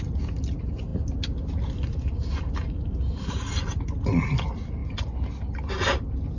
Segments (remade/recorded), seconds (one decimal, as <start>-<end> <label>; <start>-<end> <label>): 0.0-6.4 recorded